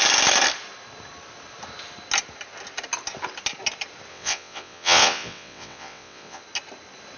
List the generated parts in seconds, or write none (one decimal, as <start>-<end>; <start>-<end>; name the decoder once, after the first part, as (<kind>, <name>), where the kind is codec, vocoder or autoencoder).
4.1-6.4 (vocoder, WaveNeXt)